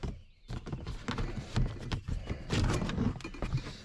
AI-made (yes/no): no